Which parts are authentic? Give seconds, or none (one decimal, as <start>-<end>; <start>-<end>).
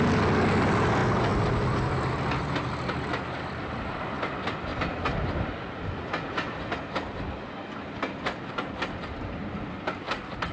0.0-10.5